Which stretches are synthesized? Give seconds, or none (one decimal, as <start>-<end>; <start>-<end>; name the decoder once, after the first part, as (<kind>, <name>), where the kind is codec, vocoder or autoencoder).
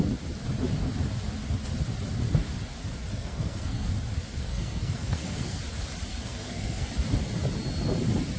3.1-3.9 (codec, SNAC); 4.4-5.6; 6.1-6.9